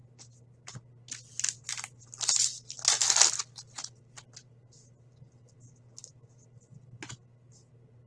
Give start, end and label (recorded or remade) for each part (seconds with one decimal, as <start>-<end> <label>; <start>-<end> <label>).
0.0-8.1 recorded